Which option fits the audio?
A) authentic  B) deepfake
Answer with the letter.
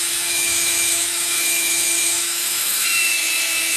B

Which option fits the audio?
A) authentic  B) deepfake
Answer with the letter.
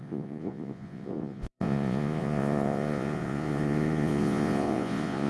B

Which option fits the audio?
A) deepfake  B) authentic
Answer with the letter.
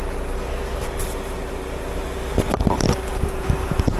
B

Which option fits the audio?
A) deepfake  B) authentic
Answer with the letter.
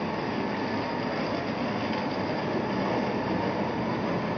B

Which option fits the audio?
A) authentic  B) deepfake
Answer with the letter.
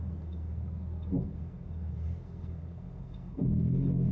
B